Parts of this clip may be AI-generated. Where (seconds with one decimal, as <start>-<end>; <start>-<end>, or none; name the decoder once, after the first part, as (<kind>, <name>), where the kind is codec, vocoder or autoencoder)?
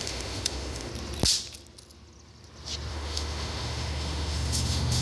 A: 0.0-0.9 (autoencoder, DAC-VAE); 2.9-5.0